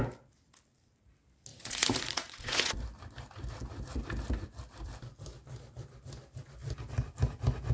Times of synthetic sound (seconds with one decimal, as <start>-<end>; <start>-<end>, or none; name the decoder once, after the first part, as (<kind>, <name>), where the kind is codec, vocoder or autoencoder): 1.5-2.8 (vocoder, Vocos)